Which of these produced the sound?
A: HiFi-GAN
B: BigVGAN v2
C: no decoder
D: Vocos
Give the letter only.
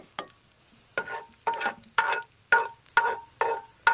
C